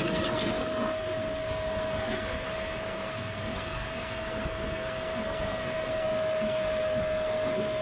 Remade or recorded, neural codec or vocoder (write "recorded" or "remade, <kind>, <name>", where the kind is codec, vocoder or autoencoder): remade, codec, SNAC